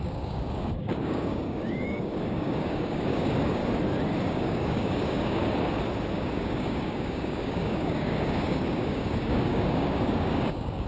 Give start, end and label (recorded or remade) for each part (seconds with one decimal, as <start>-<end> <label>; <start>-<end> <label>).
0.0-3.6 remade; 3.6-4.2 recorded; 4.2-5.4 remade; 5.4-6.1 recorded; 6.1-10.9 remade